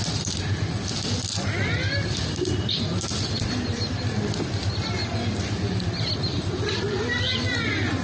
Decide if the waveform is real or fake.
real